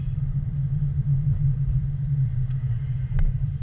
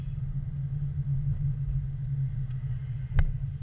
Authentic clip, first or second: second